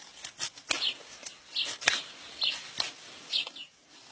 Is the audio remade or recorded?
recorded